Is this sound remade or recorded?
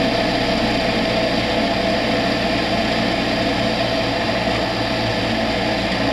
recorded